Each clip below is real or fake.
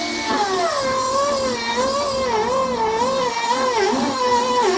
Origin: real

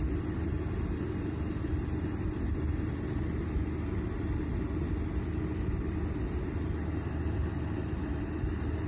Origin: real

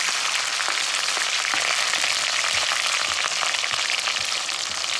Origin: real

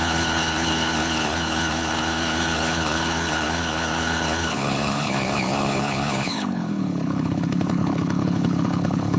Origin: fake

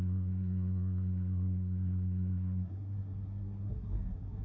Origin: fake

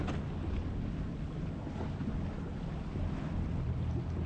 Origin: real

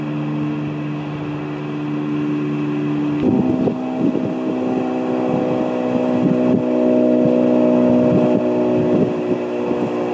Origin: real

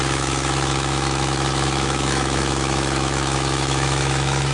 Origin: fake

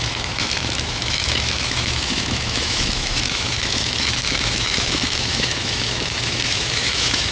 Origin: fake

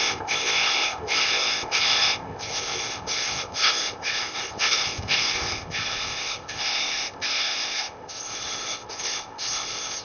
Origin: fake